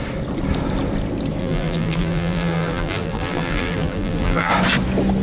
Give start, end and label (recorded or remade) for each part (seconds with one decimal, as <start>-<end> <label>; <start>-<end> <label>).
0.0-1.4 recorded; 1.4-4.5 remade; 4.5-5.2 recorded